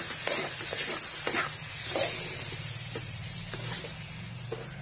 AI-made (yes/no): no